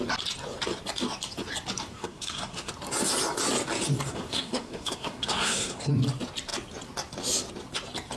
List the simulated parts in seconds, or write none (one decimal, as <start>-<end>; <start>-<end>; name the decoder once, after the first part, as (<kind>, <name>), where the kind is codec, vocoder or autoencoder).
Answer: 2.0-2.7 (codec, SNAC); 4.1-5.9